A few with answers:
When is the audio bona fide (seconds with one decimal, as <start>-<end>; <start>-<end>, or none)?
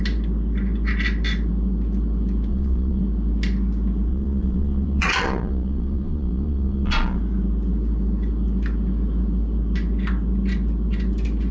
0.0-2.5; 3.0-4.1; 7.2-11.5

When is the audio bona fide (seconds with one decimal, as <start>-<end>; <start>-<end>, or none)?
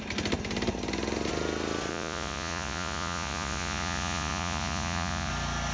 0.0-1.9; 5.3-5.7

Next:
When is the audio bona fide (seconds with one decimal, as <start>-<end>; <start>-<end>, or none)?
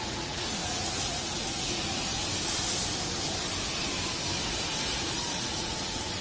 2.1-4.9